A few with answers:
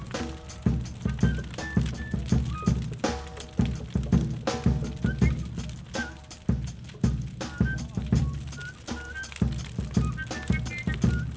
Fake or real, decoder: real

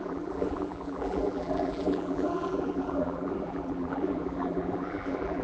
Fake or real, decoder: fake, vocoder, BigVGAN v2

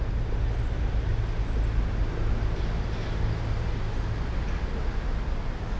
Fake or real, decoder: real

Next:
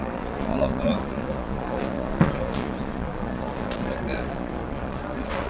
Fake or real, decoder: fake, vocoder, Vocos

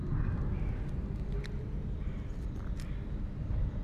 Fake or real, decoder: real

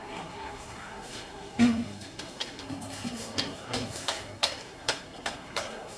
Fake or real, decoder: fake, codec, SNAC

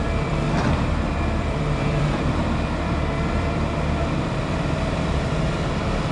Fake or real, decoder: fake, vocoder, BigVGAN v2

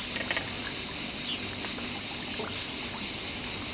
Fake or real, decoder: real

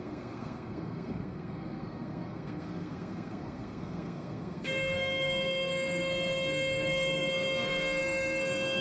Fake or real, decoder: fake, codec, SNAC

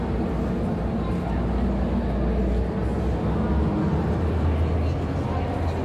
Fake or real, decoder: real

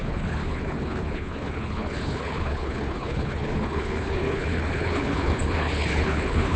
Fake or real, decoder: fake, codec, HILCodec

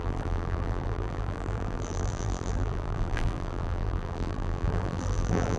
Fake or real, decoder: fake, vocoder, BigVGAN v2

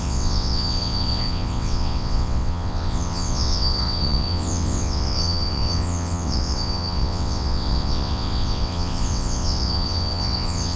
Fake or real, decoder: fake, vocoder, WaveNeXt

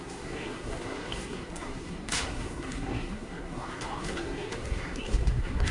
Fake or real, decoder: fake, codec, SNAC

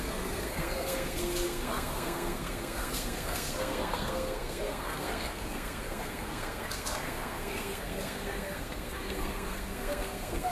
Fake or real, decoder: fake, codec, SNAC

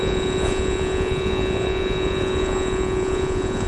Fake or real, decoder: fake, vocoder, Vocos